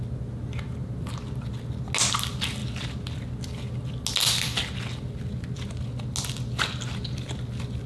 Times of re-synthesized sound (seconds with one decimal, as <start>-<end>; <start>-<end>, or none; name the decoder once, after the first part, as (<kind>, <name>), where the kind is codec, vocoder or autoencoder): none